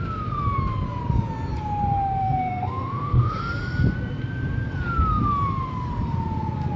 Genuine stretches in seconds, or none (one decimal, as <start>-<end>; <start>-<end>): 0.0-2.2; 3.4-6.8